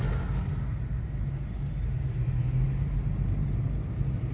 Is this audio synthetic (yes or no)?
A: no